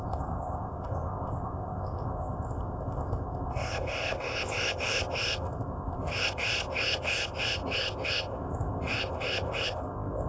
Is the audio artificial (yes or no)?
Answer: yes